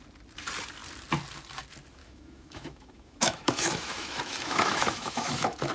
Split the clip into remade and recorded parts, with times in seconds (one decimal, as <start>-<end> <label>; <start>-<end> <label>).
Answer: 0.0-2.0 recorded; 2.0-5.7 remade